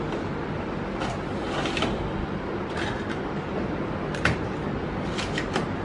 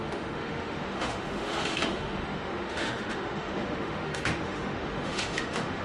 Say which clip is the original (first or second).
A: first